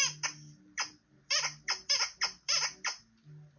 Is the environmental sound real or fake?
real